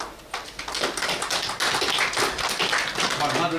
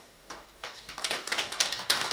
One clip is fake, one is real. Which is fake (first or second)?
second